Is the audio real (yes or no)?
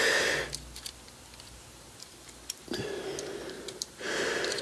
no